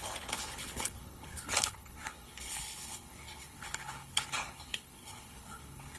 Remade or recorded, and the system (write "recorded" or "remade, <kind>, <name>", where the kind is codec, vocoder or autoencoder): remade, codec, HILCodec